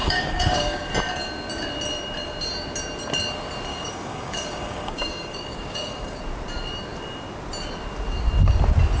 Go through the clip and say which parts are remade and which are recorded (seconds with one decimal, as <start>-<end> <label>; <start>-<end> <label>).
0.0-0.9 remade; 0.9-3.7 recorded; 3.7-6.2 remade; 6.2-9.0 recorded